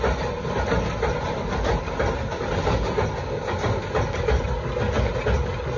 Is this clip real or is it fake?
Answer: real